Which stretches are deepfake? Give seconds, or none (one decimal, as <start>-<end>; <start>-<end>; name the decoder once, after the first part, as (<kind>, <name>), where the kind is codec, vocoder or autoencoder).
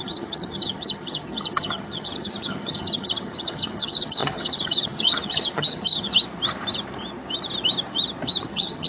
0.0-6.1 (vocoder, HiFi-GAN); 8.4-8.9